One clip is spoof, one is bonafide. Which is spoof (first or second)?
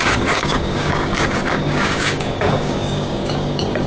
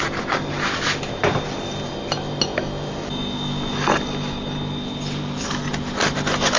first